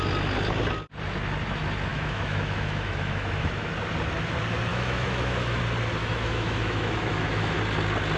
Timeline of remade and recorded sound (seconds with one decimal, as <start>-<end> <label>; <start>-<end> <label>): 0.0-1.9 recorded; 1.9-3.7 remade; 3.7-4.7 recorded; 4.7-5.6 remade; 5.6-6.0 recorded; 6.0-7.6 remade; 7.6-8.2 recorded